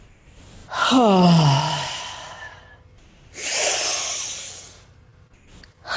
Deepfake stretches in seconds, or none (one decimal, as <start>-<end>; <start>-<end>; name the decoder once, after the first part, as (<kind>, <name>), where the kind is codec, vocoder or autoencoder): none

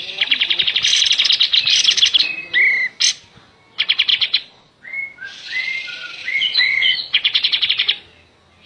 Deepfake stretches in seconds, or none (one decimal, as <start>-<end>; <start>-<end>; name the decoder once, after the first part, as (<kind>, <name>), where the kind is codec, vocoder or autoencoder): 4.1-4.7 (vocoder, Vocos); 6.2-7.7